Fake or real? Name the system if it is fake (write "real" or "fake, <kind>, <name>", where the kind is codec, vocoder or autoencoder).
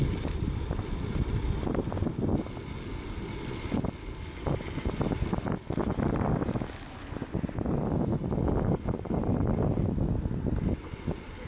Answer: real